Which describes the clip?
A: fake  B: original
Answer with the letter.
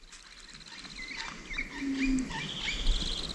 B